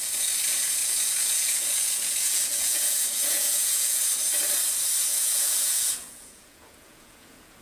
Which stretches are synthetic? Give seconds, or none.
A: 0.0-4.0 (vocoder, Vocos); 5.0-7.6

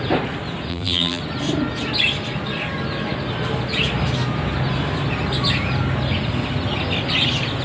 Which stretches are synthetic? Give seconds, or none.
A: 0.7-1.2 (vocoder, BigVGAN v2)

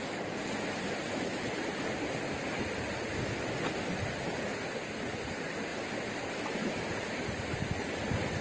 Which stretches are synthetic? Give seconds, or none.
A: none

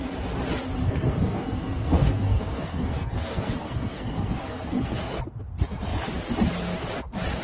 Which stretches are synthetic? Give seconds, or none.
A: 0.8-5.2 (codec, SNAC)